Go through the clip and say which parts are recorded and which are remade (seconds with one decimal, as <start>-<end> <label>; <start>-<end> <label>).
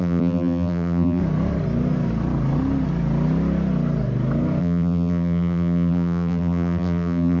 0.0-1.2 remade; 1.2-4.6 recorded; 4.6-7.4 remade